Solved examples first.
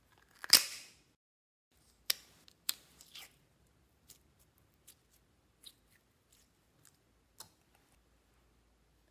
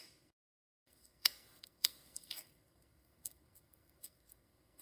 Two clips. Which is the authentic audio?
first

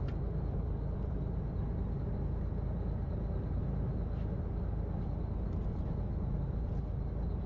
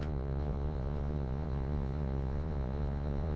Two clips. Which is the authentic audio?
first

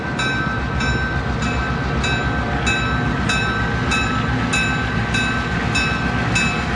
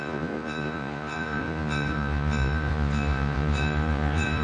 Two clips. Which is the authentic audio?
first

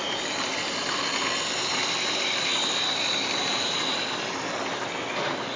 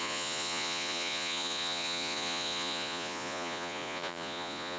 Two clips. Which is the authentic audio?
first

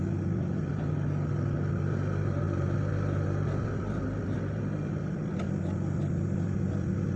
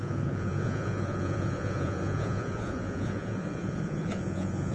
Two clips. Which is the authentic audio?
first